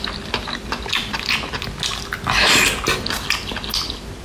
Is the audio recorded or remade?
recorded